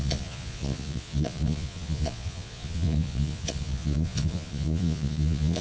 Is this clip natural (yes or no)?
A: no